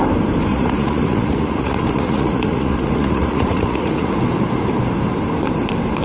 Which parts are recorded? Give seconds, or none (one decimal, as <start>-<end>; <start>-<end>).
0.0-0.5; 4.1-6.0